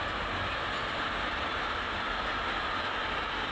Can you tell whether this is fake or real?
real